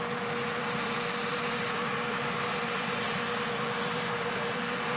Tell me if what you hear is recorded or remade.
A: remade